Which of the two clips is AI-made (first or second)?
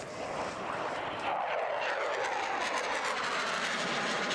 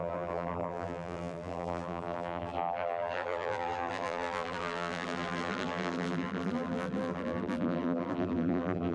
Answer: second